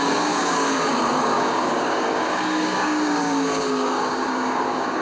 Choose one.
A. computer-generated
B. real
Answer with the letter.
A